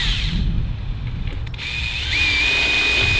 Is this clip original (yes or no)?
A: yes